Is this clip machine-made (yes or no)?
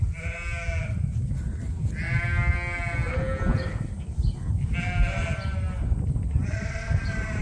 no